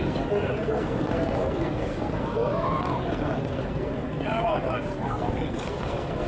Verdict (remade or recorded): remade